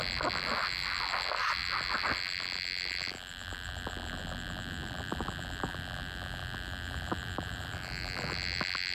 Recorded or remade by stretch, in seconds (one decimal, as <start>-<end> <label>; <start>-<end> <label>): 0.0-8.9 recorded